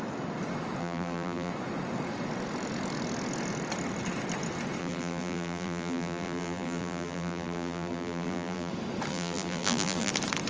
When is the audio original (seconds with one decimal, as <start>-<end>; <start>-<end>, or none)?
0.0-0.8; 1.5-4.8; 8.7-9.1; 10.1-10.5